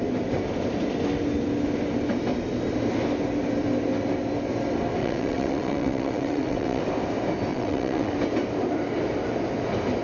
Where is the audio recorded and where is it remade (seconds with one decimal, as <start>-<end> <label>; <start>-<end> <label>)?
0.0-5.0 recorded; 5.0-6.8 remade; 6.8-7.5 recorded; 7.5-8.1 remade; 8.1-10.0 recorded